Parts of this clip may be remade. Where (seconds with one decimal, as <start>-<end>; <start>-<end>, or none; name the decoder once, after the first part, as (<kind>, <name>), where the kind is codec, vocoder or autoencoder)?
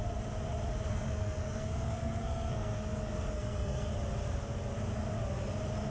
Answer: 0.9-3.9 (codec, SNAC)